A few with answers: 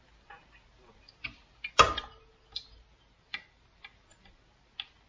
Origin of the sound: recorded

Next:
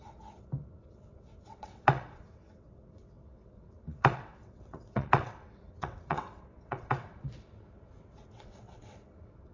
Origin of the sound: remade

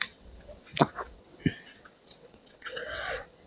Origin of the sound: remade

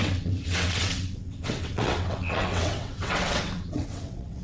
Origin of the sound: remade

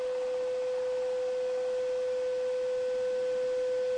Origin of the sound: recorded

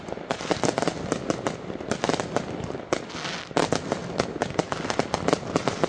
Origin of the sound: recorded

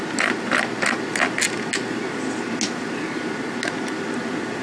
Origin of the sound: recorded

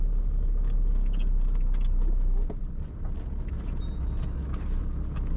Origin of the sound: recorded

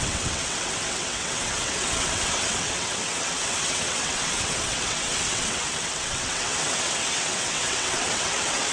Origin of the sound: remade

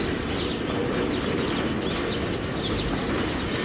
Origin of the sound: recorded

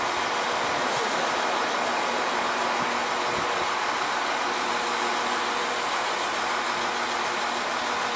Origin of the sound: recorded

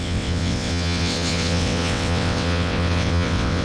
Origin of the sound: remade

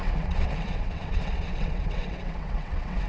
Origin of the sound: remade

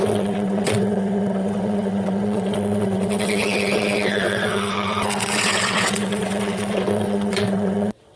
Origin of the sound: remade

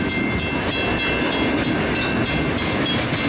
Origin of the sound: recorded